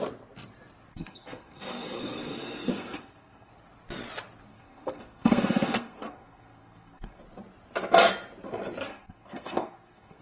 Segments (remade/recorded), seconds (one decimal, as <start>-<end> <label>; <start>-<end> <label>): 0.0-0.9 recorded; 0.9-3.5 remade; 3.5-4.5 recorded; 4.5-7.2 remade; 7.2-8.9 recorded; 8.9-10.2 remade